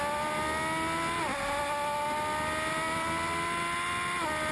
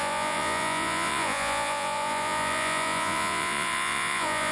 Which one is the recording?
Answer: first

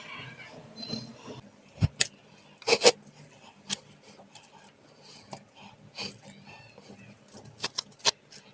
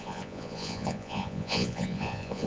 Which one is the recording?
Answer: first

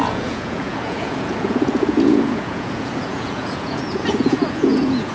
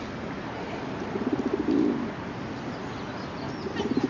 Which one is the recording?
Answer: second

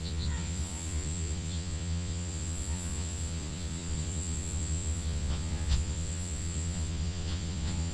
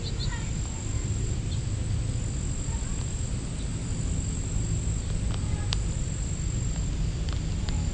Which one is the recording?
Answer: second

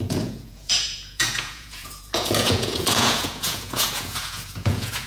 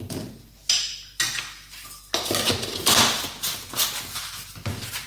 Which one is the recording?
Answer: second